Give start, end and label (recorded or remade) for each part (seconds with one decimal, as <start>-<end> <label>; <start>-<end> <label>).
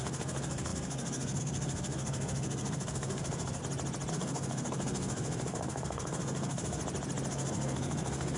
0.0-3.6 remade; 3.6-4.1 recorded; 4.1-6.8 remade; 6.8-7.3 recorded; 7.3-8.4 remade